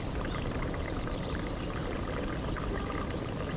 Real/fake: real